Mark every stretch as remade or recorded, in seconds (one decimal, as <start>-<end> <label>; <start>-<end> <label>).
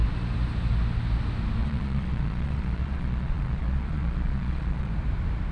0.0-1.6 recorded; 1.6-4.9 remade; 4.9-5.5 recorded